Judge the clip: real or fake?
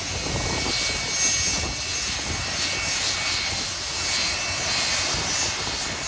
real